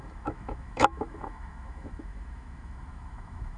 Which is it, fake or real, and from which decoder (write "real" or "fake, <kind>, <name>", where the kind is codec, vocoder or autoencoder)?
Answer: fake, autoencoder, DAC-VAE